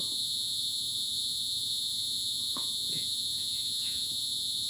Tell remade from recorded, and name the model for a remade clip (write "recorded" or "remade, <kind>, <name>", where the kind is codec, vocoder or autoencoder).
remade, vocoder, Vocos